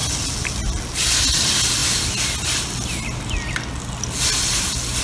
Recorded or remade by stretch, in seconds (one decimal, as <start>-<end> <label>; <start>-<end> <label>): 0.0-5.0 recorded